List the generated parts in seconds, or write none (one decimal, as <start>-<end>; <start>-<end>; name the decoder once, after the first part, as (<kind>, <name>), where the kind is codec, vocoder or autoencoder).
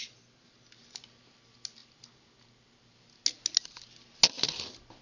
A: none